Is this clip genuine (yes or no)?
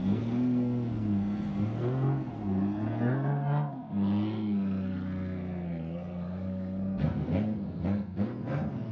no